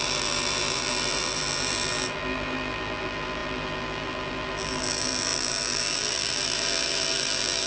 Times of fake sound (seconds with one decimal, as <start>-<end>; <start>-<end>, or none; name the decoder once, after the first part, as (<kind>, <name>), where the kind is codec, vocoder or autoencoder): 0.0-7.7 (vocoder, BigVGAN v2)